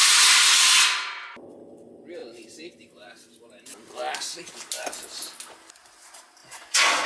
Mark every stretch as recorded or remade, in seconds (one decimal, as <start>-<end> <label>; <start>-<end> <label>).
0.0-6.4 recorded; 6.4-7.1 remade